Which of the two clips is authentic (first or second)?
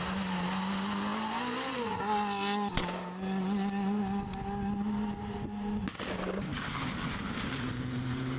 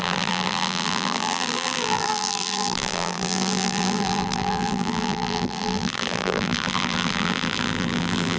first